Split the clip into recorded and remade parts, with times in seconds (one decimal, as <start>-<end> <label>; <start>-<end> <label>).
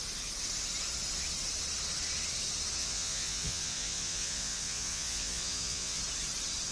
0.0-2.8 recorded; 2.8-6.0 remade; 6.0-6.7 recorded